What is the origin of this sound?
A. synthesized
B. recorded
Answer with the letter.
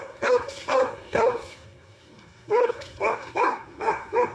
A